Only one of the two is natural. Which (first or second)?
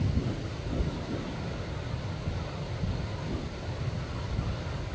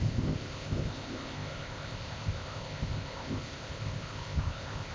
first